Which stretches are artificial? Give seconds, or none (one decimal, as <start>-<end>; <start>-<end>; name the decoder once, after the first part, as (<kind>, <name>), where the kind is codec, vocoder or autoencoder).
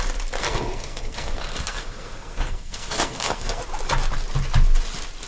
0.4-3.6 (codec, SNAC)